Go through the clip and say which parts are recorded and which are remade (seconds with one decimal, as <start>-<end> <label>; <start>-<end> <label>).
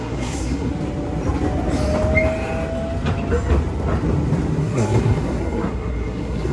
0.0-0.7 remade; 0.7-4.6 recorded; 4.6-6.5 remade